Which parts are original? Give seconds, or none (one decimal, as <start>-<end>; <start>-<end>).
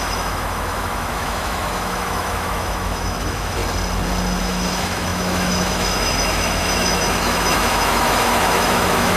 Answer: 3.6-4.4